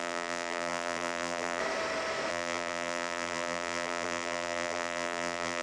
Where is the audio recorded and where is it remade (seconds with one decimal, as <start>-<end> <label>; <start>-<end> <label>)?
0.0-1.6 remade; 1.6-2.3 recorded; 2.3-5.6 remade